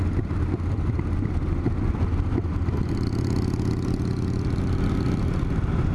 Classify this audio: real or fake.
real